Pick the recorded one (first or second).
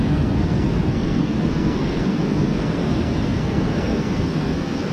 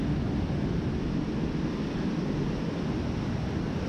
second